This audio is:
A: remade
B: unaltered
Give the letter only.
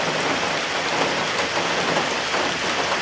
B